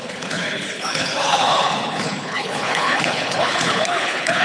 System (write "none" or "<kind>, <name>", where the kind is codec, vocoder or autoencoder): codec, HILCodec